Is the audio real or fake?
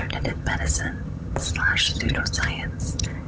fake